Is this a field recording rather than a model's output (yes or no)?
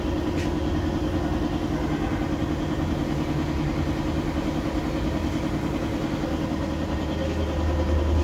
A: yes